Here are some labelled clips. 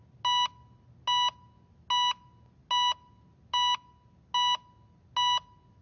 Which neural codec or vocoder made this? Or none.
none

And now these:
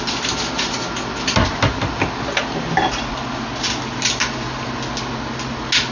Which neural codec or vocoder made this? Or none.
none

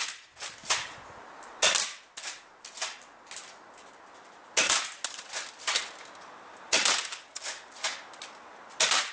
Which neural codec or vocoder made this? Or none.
none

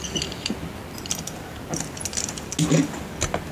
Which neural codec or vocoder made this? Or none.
none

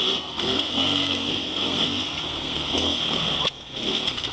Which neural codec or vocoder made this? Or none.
codec, SNAC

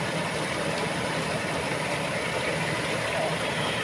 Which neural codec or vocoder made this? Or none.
none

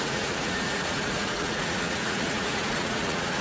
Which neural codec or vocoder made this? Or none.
vocoder, Vocos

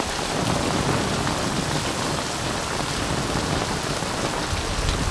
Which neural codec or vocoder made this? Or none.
none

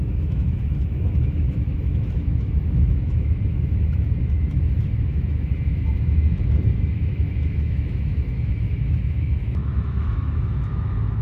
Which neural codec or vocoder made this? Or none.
autoencoder, DAC-VAE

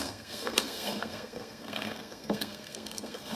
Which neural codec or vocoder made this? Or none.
codec, SNAC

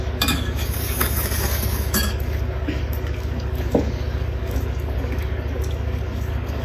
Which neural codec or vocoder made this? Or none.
codec, DAC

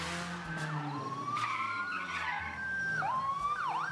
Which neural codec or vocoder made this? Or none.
none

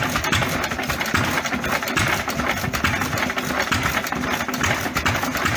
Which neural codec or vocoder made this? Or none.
none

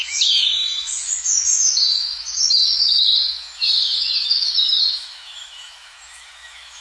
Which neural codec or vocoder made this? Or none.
autoencoder, DAC-VAE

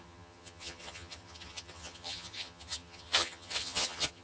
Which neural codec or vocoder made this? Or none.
vocoder, HiFi-GAN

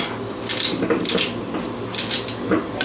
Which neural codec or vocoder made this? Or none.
none